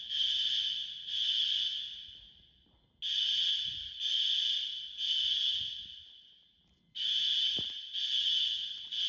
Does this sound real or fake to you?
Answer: real